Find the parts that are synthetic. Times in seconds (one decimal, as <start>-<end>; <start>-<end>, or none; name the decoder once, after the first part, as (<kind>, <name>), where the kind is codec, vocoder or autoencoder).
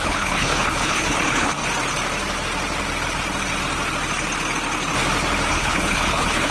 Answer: 0.0-1.6 (codec, HILCodec); 5.5-6.5